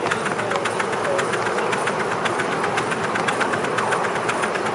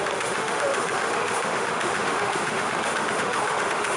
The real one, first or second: first